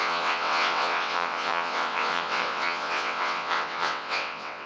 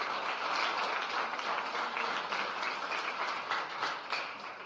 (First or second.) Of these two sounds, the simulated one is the first